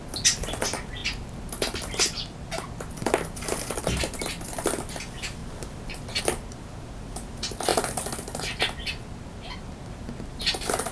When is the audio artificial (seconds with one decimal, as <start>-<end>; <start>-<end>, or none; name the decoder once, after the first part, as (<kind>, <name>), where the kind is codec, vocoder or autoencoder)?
none